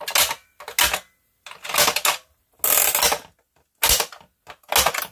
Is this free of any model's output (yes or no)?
yes